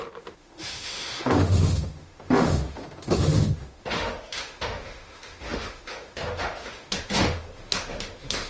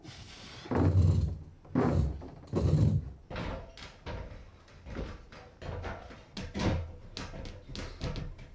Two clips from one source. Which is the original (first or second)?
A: second